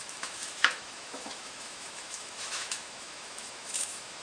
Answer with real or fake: fake